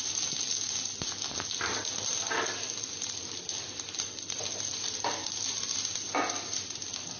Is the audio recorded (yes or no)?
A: yes